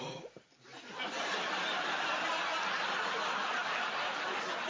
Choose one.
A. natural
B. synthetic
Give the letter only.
A